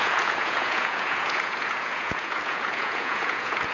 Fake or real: fake